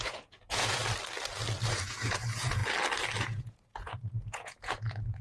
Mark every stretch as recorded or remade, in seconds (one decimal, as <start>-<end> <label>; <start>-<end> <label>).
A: 0.0-0.8 remade; 0.8-1.8 recorded; 1.8-2.6 remade; 2.6-3.2 recorded; 3.2-5.2 remade